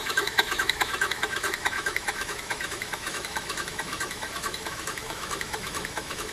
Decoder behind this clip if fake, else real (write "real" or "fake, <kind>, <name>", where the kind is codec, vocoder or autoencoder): fake, autoencoder, DAC-VAE